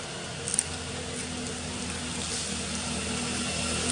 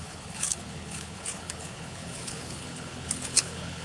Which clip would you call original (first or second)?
first